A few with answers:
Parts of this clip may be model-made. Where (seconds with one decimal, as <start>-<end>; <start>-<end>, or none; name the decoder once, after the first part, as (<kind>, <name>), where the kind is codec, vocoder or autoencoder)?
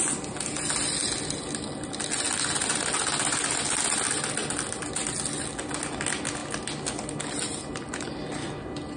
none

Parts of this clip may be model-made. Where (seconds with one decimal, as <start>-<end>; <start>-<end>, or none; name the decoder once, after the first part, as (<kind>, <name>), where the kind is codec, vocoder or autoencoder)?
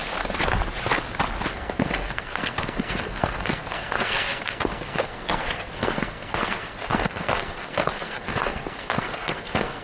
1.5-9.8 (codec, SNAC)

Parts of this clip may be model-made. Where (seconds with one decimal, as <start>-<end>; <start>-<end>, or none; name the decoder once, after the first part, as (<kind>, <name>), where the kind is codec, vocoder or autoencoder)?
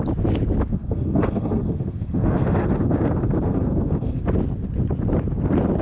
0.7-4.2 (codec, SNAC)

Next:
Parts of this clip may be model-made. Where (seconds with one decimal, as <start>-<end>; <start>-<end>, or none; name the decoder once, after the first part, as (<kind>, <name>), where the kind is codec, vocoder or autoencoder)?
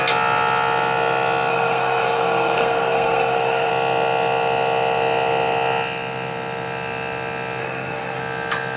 1.5-3.7 (codec, SNAC); 7.6-8.2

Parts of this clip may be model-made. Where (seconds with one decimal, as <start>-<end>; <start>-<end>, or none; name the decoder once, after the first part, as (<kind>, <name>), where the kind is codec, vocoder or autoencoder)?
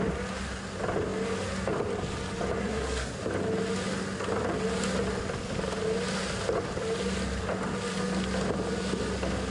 2.6-3.1 (codec, SNAC)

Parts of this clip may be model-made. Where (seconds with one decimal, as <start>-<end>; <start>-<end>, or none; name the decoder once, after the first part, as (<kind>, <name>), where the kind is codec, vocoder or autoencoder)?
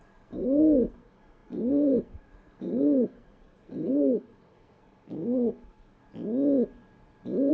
0.0-6.0 (codec, SNAC)